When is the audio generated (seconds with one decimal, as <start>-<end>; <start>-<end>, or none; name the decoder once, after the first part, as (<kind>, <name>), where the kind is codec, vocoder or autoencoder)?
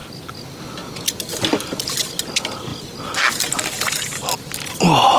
none